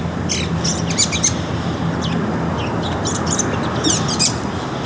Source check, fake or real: real